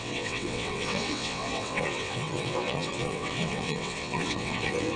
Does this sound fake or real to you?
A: fake